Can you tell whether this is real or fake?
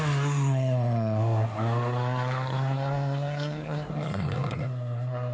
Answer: fake